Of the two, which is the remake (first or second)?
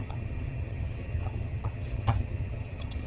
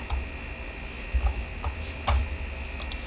first